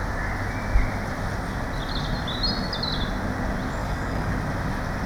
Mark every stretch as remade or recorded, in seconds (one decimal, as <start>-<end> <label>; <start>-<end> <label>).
0.0-3.8 recorded; 3.8-4.3 remade; 4.3-5.1 recorded